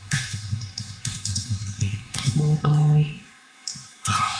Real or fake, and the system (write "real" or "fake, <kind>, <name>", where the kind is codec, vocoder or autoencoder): fake, codec, SNAC